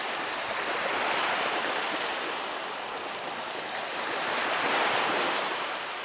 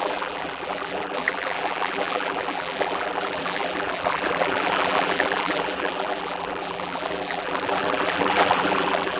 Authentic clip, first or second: first